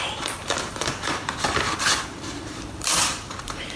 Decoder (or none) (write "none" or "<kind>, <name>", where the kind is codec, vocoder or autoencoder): vocoder, BigVGAN v2